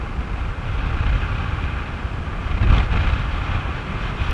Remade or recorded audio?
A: remade